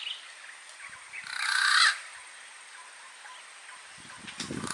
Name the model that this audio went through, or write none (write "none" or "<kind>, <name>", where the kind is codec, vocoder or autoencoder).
none